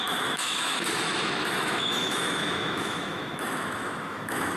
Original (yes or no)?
no